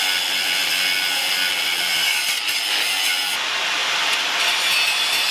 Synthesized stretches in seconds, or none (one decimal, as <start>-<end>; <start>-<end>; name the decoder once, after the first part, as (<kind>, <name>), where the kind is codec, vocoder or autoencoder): 3.8-4.3 (vocoder, BigVGAN v2)